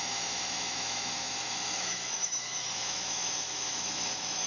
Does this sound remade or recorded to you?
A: remade